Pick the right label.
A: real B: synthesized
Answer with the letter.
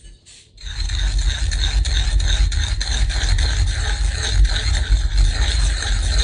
A